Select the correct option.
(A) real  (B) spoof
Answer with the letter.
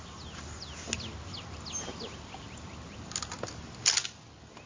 A